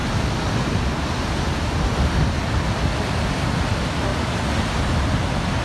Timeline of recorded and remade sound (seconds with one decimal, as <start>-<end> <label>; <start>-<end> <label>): 0.0-5.6 recorded

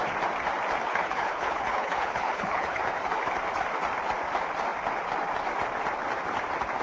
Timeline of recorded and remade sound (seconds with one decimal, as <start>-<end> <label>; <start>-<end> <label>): 0.0-0.9 recorded; 0.9-2.8 remade; 2.8-6.8 recorded

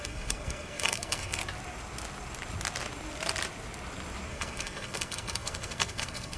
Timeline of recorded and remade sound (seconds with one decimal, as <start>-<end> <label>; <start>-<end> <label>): 0.0-1.4 remade; 1.4-4.3 recorded; 4.3-6.4 remade